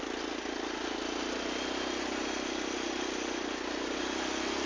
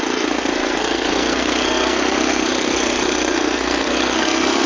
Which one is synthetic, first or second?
second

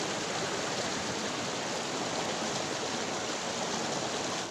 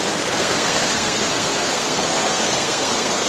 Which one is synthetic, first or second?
second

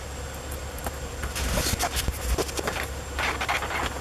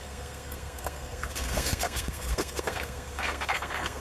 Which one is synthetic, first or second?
second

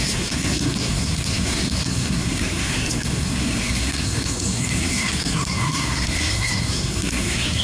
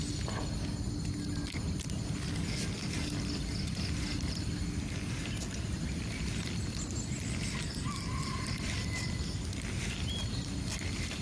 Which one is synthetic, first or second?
first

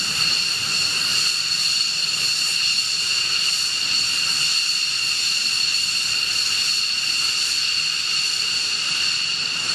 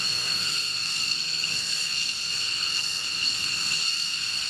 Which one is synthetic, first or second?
second